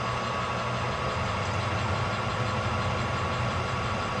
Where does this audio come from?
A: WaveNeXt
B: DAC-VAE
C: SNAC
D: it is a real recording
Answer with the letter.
D